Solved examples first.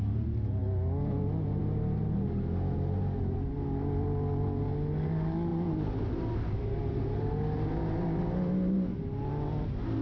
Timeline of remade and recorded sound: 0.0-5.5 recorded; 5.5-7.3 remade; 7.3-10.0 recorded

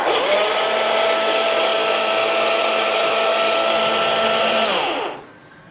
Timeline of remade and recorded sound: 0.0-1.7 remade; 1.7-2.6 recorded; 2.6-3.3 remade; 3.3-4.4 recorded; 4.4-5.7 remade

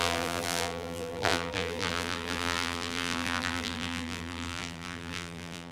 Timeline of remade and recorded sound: 0.0-5.7 remade

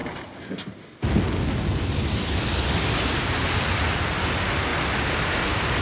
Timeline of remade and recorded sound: 0.0-5.8 recorded